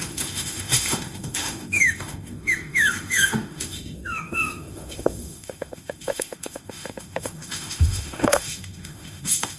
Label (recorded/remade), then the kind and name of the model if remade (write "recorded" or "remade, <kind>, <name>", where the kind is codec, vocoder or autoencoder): remade, autoencoder, DAC-VAE